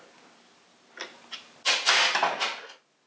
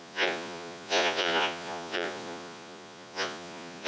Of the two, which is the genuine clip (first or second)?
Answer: first